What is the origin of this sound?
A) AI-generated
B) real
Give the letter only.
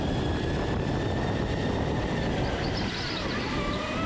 B